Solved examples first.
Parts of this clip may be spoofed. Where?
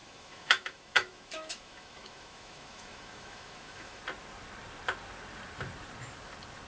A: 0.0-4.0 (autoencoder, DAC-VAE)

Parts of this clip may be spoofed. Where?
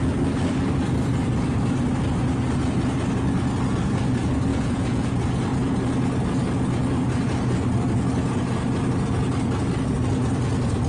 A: 4.5-5.1 (vocoder, Vocos)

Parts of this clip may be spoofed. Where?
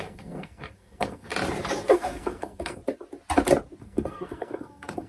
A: 0.0-1.3 (codec, SNAC); 1.9-2.8; 3.8-5.1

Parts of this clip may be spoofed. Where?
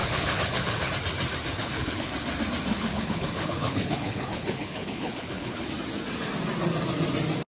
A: 0.0-0.9 (codec, HILCodec); 1.6-2.1; 2.7-5.7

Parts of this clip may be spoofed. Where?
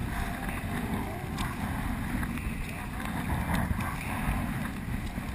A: none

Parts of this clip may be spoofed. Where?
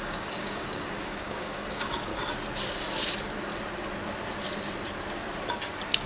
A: 0.0-2.1 (codec, DAC)